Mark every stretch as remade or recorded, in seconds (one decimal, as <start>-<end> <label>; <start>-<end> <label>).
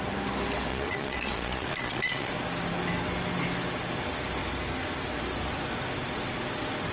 0.0-0.7 recorded; 0.7-2.3 remade; 2.3-6.9 recorded